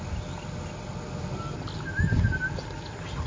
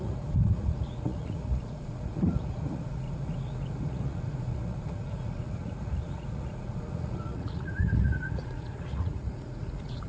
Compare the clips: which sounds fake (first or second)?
second